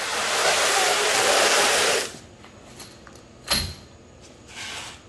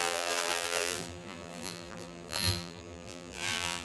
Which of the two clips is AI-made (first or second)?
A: second